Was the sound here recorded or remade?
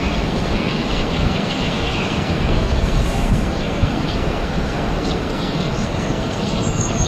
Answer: remade